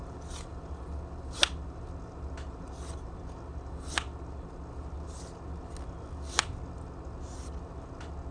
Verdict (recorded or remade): recorded